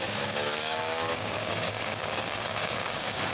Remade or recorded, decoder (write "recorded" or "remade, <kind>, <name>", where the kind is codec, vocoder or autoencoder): remade, codec, DAC